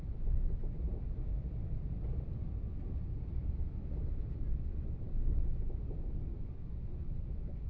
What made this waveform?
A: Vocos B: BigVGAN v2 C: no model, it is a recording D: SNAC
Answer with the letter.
C